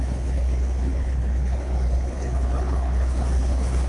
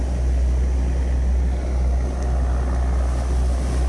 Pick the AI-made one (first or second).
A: first